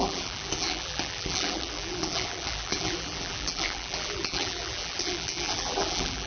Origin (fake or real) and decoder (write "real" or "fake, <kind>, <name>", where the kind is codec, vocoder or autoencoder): fake, vocoder, BigVGAN v2